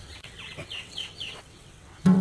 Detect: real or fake fake